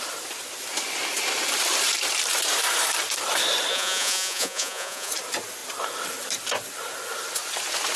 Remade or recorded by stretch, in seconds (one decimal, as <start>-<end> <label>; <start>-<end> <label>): 0.0-3.7 recorded; 3.7-5.1 remade; 5.1-8.0 recorded